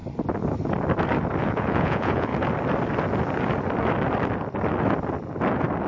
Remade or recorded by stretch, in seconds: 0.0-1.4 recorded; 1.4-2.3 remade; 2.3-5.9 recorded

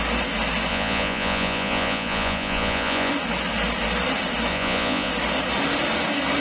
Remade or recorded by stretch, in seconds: 0.0-0.7 recorded; 0.7-3.1 remade; 3.1-4.5 recorded; 4.5-5.1 remade; 5.1-6.4 recorded

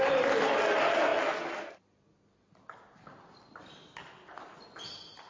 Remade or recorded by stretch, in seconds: 0.0-5.3 recorded

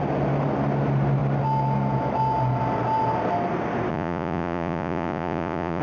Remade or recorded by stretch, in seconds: 0.0-3.9 recorded; 3.9-5.8 remade

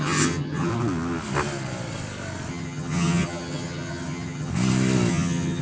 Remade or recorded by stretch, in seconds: 0.0-0.7 remade; 0.7-2.5 recorded; 2.5-4.5 remade; 4.5-5.1 recorded; 5.1-5.6 remade

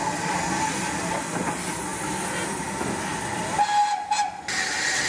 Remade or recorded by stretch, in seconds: 0.0-5.1 recorded

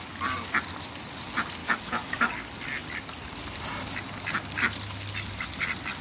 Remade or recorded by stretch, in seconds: 0.0-1.6 recorded; 1.6-2.3 remade; 2.3-6.0 recorded